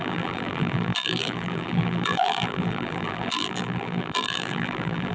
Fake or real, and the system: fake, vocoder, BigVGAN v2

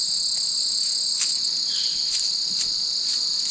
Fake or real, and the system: real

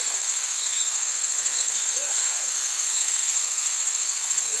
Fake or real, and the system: fake, codec, SNAC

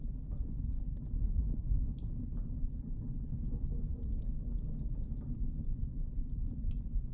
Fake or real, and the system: real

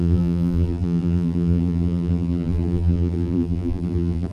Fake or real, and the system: fake, vocoder, BigVGAN v2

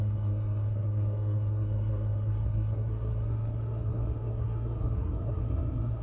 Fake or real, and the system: fake, codec, SNAC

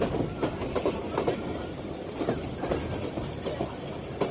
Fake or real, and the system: real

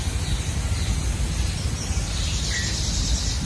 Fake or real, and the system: real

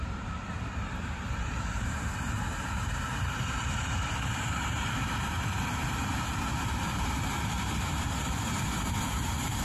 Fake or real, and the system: fake, vocoder, BigVGAN v2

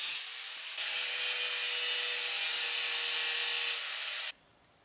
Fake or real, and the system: real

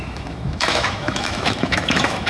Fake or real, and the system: fake, autoencoder, DAC-VAE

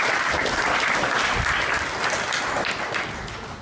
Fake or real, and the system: real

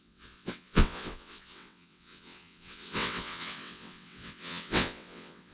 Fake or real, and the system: fake, vocoder, WaveNeXt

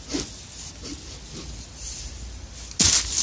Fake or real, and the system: real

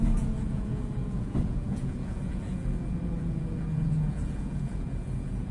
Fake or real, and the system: fake, vocoder, Vocos